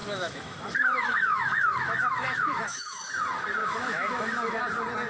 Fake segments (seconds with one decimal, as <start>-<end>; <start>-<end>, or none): 0.0-3.1; 3.6-4.6